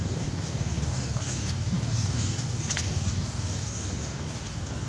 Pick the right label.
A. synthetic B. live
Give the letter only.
A